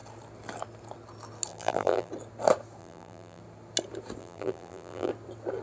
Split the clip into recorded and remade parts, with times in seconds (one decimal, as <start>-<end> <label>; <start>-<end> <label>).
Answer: 0.0-1.5 recorded; 1.5-2.1 remade; 2.1-2.8 recorded; 2.8-3.4 remade; 3.4-4.2 recorded; 4.2-5.1 remade; 5.1-5.6 recorded